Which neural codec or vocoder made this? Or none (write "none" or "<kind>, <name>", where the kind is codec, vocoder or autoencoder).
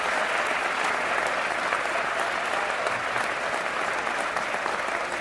none